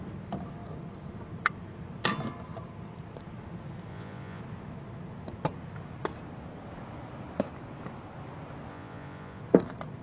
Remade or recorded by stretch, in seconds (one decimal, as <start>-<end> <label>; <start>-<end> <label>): 0.0-3.9 recorded; 3.9-4.4 remade; 4.4-8.7 recorded; 8.7-9.4 remade; 9.4-10.0 recorded